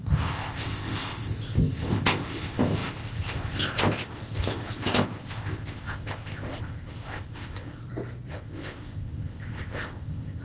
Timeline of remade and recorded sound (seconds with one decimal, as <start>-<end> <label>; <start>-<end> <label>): 0.0-7.8 remade; 7.8-8.3 recorded; 8.3-10.4 remade